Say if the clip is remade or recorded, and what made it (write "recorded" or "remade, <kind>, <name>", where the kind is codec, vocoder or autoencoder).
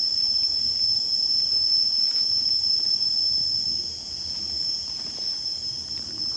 remade, vocoder, BigVGAN v2